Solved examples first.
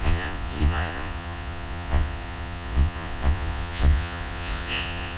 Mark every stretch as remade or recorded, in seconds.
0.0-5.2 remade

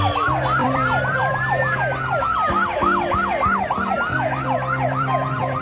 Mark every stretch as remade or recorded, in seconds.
0.0-0.6 recorded; 0.6-1.4 remade; 1.4-4.1 recorded; 4.1-5.6 remade

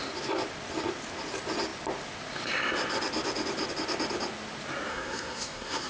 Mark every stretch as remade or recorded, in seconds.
0.0-4.9 recorded; 4.9-5.9 remade

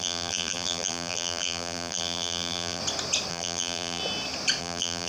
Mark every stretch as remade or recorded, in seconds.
0.0-2.8 remade; 2.8-3.3 recorded; 3.3-4.0 remade; 4.0-4.6 recorded; 4.6-5.1 remade

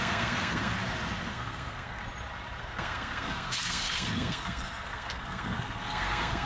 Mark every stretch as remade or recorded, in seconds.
0.0-0.7 remade; 0.7-1.2 recorded; 1.2-2.0 remade; 2.0-2.6 recorded; 2.6-6.5 remade

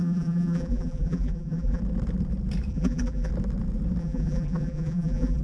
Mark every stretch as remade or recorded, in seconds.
0.0-1.8 remade; 1.8-2.7 recorded; 2.7-3.3 remade; 3.3-4.0 recorded; 4.0-5.4 remade

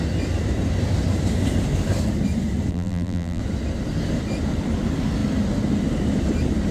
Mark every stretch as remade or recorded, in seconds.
0.0-2.7 recorded; 2.7-3.4 remade; 3.4-6.7 recorded